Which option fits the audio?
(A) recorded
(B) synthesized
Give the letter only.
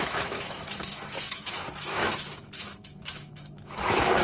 B